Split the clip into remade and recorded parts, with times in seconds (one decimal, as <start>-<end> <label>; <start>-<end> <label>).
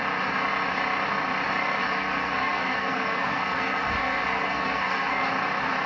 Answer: 0.0-1.8 recorded; 1.8-5.3 remade; 5.3-5.9 recorded